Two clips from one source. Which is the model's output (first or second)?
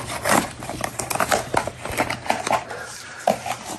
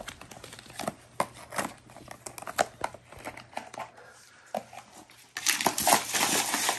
first